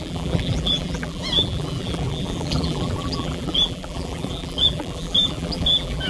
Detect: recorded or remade remade